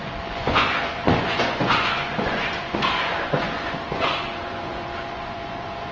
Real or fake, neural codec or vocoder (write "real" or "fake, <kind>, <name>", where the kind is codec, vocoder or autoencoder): fake, vocoder, Vocos